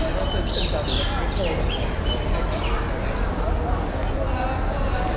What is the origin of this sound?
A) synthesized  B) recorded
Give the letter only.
B